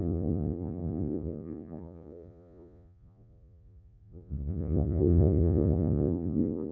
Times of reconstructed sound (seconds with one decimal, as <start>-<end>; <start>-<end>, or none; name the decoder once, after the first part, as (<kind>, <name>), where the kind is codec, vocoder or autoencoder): 0.0-6.7 (vocoder, Vocos)